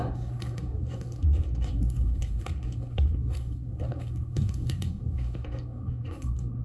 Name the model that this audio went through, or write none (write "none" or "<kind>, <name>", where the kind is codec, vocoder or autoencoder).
codec, SNAC